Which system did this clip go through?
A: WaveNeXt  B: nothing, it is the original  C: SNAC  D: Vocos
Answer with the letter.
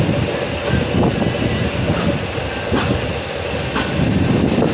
B